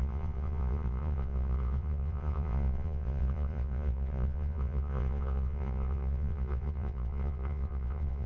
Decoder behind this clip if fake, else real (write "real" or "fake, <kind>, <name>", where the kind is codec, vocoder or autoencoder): fake, vocoder, Vocos